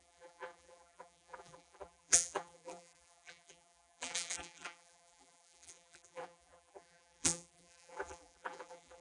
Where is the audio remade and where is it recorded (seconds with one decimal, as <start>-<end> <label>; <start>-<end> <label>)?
0.0-9.0 remade